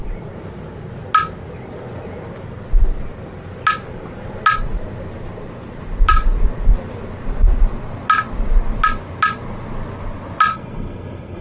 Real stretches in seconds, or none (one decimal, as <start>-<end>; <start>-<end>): 0.0-10.5